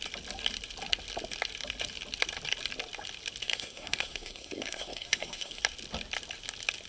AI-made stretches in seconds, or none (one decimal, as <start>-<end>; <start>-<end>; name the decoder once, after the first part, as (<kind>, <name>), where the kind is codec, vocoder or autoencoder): 3.4-5.6 (codec, SNAC)